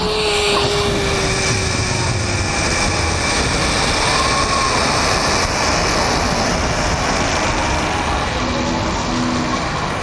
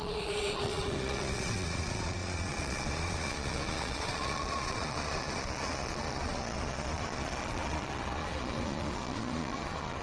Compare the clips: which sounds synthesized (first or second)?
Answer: second